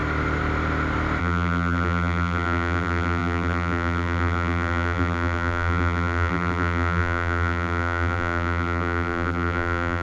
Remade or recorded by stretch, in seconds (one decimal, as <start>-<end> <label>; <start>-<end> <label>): 0.0-1.2 recorded; 1.2-10.0 remade